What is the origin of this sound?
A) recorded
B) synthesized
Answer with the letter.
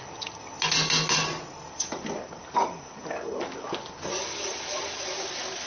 A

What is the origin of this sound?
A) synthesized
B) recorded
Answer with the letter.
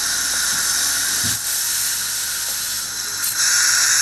B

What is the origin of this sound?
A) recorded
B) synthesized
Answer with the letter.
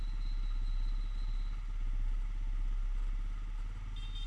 A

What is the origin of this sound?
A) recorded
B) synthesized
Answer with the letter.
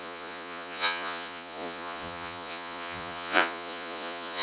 B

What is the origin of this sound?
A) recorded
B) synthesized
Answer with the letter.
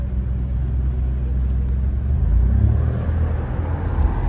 A